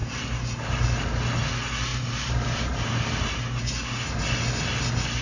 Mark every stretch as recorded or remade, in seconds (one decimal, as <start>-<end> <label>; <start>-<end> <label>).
0.0-0.9 remade; 0.9-1.9 recorded; 1.9-4.2 remade; 4.2-5.2 recorded